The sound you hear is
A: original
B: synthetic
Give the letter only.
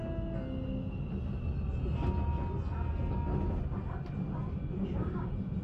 A